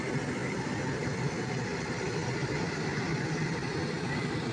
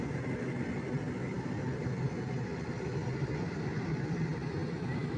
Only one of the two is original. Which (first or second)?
second